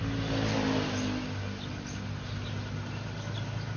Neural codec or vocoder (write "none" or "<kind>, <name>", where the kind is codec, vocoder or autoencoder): none